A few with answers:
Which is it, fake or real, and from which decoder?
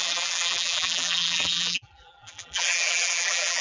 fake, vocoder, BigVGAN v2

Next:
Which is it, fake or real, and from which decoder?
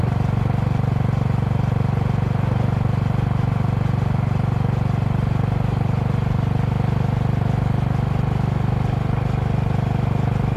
real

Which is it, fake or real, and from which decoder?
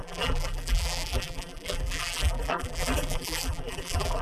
fake, vocoder, BigVGAN v2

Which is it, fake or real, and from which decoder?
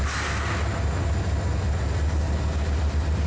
real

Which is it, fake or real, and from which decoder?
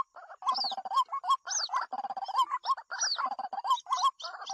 real